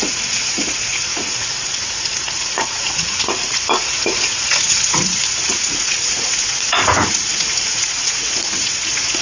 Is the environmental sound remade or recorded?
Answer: remade